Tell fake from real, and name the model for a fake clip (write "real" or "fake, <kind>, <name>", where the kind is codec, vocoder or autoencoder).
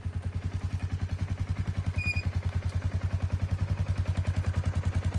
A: real